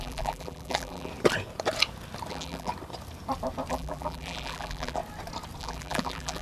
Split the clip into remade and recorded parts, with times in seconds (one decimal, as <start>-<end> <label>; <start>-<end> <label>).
0.0-1.1 remade; 1.1-2.3 recorded; 2.3-2.7 remade; 2.7-3.7 recorded; 3.7-5.0 remade; 5.0-5.6 recorded; 5.6-6.4 remade